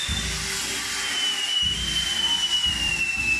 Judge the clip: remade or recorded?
recorded